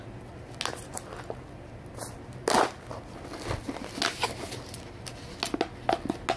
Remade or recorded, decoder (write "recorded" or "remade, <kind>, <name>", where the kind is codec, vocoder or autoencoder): recorded